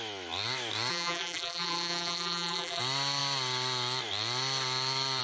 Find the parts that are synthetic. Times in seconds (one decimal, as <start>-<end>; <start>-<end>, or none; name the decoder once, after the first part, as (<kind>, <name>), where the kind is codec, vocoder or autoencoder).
0.9-2.8 (vocoder, BigVGAN v2)